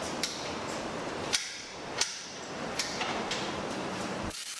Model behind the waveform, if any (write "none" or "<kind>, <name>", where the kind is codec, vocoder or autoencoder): vocoder, BigVGAN v2